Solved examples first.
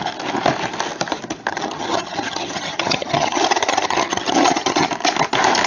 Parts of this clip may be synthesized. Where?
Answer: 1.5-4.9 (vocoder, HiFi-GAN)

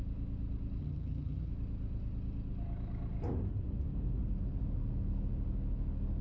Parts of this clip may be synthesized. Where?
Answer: 0.8-1.5 (vocoder, HiFi-GAN)

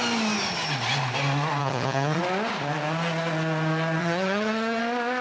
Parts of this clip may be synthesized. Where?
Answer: 1.6-2.2 (vocoder, HiFi-GAN); 4.0-4.8

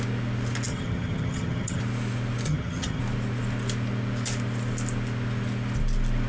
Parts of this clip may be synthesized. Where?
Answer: 0.7-1.8 (vocoder, HiFi-GAN); 2.5-3.0

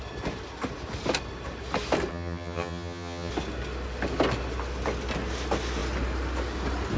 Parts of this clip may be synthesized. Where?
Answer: 2.1-3.3 (vocoder, HiFi-GAN)

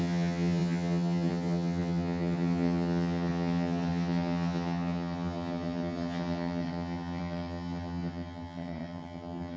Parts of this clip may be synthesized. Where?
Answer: 0.0-9.6 (vocoder, HiFi-GAN)

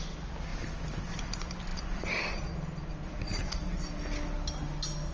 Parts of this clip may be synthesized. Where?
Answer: none

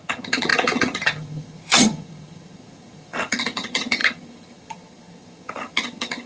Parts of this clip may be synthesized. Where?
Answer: 0.0-6.3 (vocoder, HiFi-GAN)